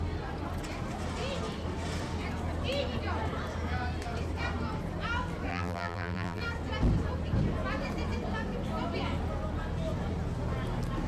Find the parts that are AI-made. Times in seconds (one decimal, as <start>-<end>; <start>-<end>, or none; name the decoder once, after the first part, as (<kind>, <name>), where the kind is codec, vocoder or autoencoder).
5.5-6.4 (vocoder, BigVGAN v2)